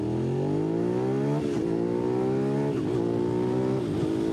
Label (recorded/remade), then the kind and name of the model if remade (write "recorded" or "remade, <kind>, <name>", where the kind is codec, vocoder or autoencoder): recorded